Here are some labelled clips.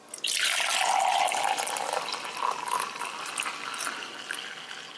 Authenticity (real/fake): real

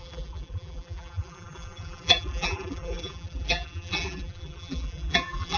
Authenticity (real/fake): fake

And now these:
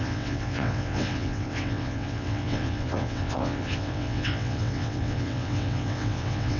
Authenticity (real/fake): fake